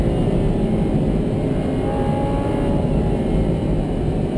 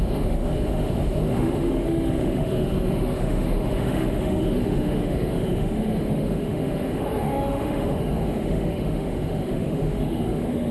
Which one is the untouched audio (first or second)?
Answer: first